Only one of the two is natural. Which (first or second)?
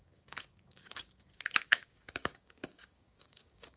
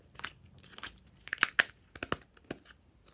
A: second